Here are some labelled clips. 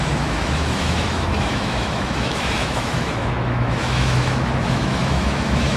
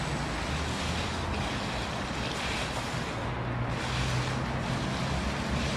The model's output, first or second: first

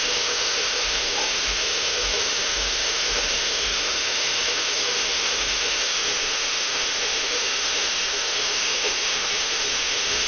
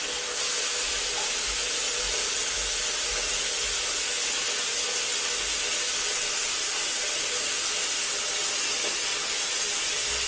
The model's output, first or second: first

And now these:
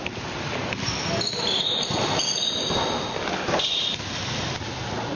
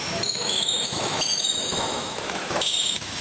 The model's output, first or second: second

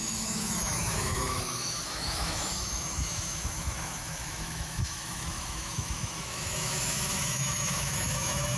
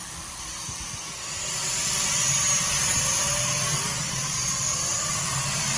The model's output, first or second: first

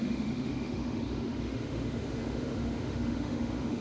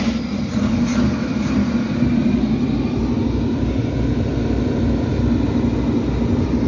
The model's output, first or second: first